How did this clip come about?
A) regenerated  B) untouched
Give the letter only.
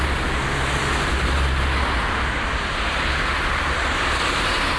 B